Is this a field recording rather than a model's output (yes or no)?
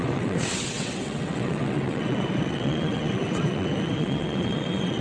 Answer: no